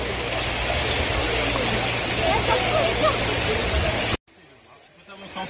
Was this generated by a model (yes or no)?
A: no